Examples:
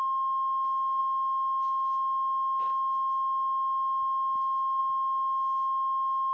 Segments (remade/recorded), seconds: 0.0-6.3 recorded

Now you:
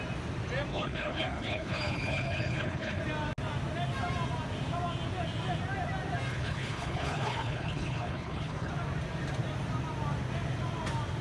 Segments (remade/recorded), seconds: 0.0-0.7 recorded; 0.7-3.0 remade; 3.0-6.3 recorded; 6.3-8.7 remade; 8.7-11.2 recorded

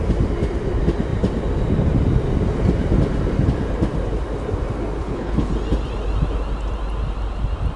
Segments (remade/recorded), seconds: 0.0-5.0 recorded; 5.0-5.5 remade; 5.5-7.8 recorded

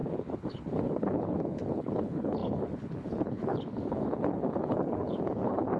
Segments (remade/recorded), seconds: 0.0-5.8 remade

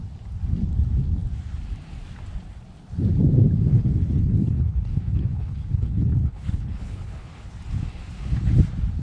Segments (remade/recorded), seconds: 0.0-3.7 recorded; 3.7-7.5 remade; 7.5-9.0 recorded

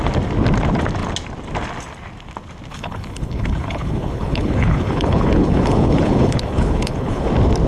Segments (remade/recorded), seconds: 0.0-2.7 recorded; 2.7-7.3 remade; 7.3-7.7 recorded

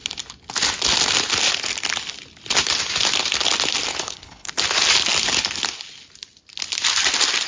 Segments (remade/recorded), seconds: 0.0-3.9 recorded; 3.9-4.5 remade; 4.5-7.5 recorded